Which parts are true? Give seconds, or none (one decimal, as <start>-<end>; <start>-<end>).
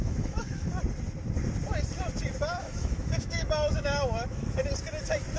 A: 0.7-2.6; 4.6-5.4